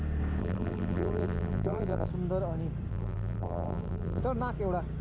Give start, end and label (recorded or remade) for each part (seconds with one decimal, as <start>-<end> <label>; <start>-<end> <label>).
0.0-0.4 recorded; 0.4-2.1 remade; 2.1-2.9 recorded; 2.9-4.2 remade; 4.2-5.0 recorded